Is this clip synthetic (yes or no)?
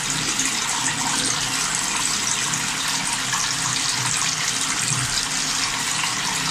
no